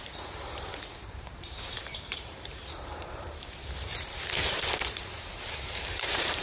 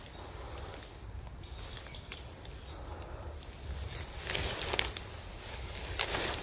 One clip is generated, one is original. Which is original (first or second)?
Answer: second